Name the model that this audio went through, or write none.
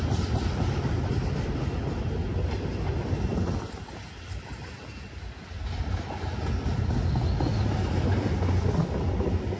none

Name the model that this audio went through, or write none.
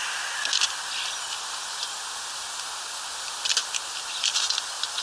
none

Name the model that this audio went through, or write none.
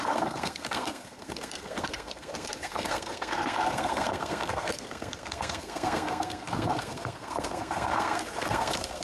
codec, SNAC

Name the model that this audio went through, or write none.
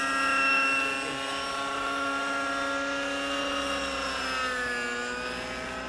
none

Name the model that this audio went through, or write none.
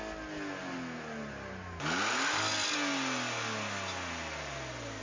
none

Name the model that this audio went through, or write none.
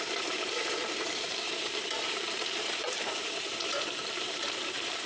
vocoder, BigVGAN v2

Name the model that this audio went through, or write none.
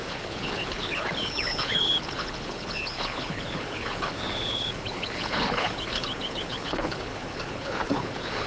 codec, HILCodec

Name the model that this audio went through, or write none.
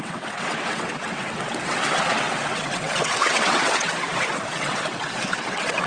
vocoder, WaveNeXt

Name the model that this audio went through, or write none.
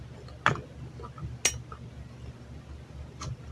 none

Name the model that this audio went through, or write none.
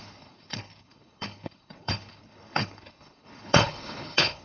codec, HILCodec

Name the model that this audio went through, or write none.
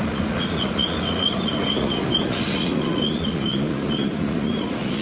vocoder, Vocos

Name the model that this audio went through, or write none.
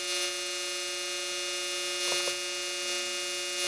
none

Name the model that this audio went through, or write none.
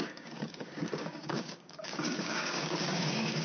codec, DAC